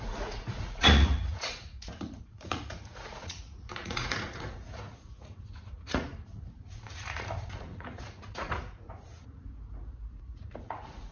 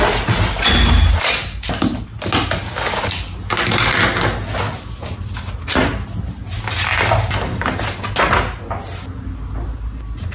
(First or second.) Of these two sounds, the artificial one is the first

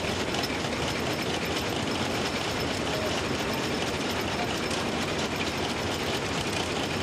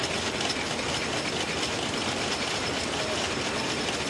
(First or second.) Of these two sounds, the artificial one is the first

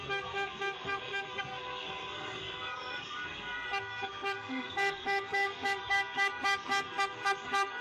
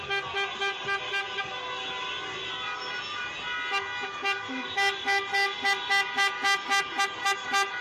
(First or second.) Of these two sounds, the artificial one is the first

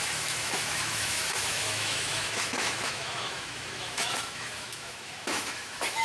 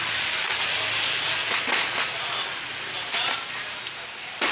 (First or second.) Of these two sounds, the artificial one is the first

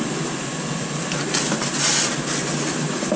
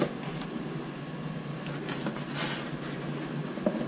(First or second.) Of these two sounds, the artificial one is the first